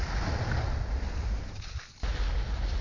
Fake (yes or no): no